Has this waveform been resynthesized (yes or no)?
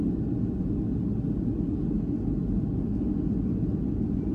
no